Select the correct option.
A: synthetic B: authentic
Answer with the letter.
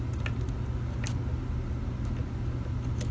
B